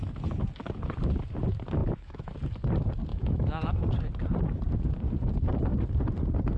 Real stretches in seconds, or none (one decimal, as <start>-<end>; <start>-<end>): 0.0-1.8; 2.3-3.1; 3.7-6.6